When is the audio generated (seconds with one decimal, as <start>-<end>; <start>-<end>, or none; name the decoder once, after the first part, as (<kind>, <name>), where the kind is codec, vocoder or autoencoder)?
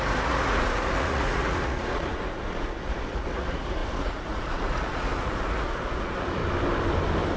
0.0-6.4 (vocoder, Vocos)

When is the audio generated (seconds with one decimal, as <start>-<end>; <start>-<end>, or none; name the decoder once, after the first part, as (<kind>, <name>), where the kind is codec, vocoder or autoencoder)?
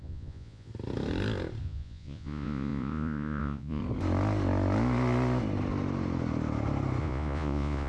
0.0-0.7 (vocoder, Vocos); 1.6-3.8; 7.0-7.9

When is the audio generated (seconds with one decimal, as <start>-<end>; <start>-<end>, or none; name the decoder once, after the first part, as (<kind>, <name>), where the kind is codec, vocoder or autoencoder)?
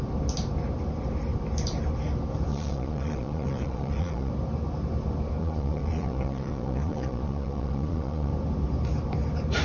2.5-4.3 (vocoder, Vocos); 5.4-8.3